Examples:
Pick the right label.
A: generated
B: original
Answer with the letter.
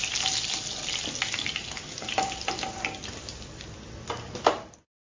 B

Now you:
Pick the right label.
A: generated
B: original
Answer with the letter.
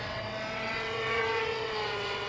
A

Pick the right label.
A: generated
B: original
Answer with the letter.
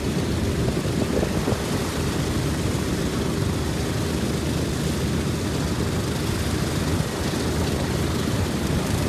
B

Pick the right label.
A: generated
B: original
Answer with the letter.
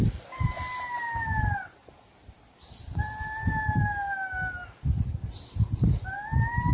B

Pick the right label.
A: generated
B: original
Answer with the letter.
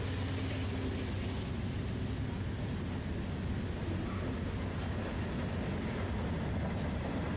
B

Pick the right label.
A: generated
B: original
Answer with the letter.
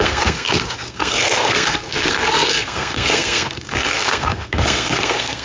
A